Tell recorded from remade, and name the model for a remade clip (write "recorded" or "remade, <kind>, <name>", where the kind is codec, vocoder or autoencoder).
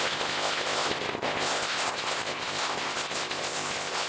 remade, codec, ZipCodec